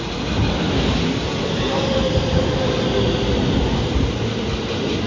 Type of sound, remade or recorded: recorded